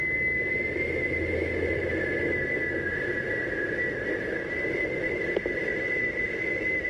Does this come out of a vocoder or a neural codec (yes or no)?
no